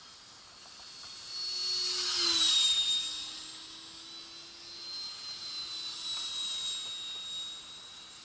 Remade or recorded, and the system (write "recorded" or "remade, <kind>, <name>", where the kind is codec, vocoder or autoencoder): recorded